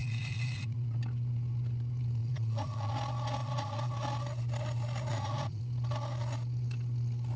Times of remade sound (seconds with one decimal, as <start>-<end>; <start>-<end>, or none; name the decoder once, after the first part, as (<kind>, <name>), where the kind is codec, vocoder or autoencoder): 0.0-1.0 (vocoder, Vocos); 2.2-2.9; 3.4-3.9; 5.1-5.6